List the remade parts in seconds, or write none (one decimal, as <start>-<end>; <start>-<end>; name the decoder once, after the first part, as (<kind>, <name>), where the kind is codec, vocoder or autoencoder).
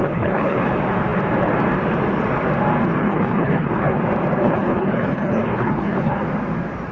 0.0-0.7 (codec, HILCodec); 3.0-4.0; 4.4-6.2